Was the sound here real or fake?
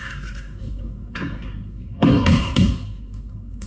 fake